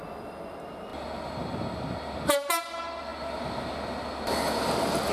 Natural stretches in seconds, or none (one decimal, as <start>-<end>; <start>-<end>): 0.0-5.1

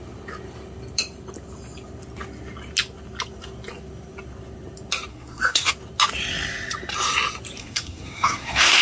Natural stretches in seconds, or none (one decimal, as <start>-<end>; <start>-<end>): 0.0-5.1; 5.7-7.6

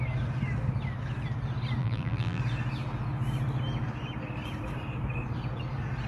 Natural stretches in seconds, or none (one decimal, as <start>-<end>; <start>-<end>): 0.0-1.8; 2.4-6.1